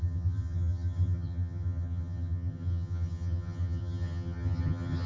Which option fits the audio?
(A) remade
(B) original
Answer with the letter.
A